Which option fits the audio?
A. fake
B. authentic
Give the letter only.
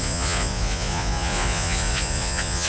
A